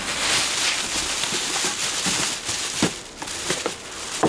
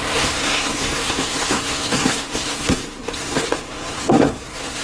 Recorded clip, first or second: first